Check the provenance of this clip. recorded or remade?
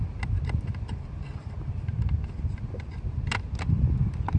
recorded